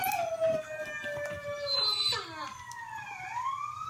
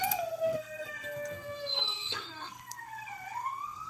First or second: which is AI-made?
second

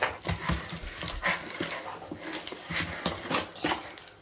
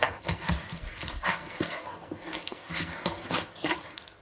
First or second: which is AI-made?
second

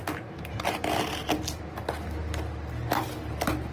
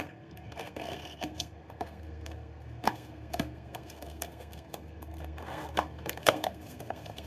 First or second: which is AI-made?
second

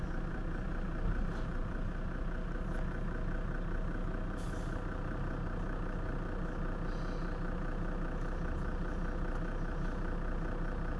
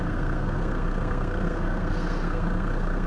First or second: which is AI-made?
second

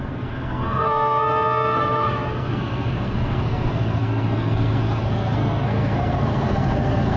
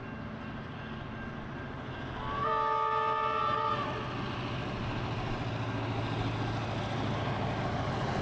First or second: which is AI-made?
first